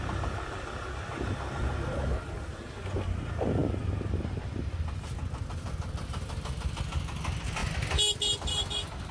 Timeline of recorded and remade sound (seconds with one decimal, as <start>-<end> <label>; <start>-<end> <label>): 0.0-3.6 recorded; 3.6-5.2 remade; 5.2-9.1 recorded